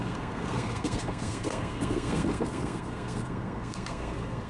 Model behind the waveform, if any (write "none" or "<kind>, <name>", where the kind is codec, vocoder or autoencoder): codec, SNAC